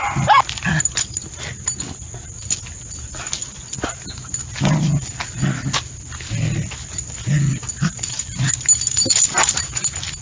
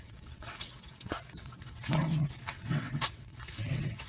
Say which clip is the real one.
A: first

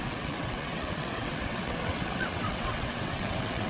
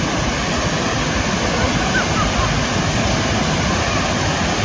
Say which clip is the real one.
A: second